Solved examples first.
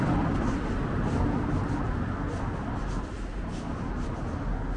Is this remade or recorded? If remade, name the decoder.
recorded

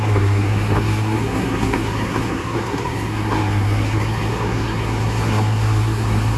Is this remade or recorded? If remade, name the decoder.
remade, codec, SNAC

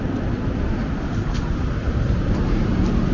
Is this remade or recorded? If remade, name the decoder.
recorded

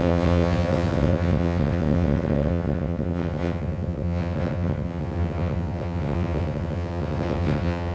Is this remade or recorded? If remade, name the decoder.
remade, vocoder, WaveNeXt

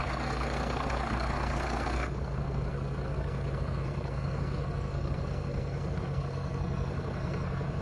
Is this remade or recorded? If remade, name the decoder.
remade, codec, SNAC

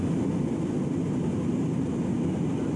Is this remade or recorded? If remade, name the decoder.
recorded